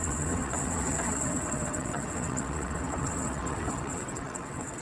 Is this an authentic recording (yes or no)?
no